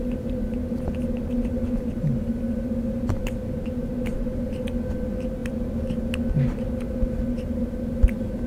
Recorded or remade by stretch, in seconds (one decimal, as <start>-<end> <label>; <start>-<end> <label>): 0.0-5.4 recorded; 5.4-6.1 remade; 6.1-8.5 recorded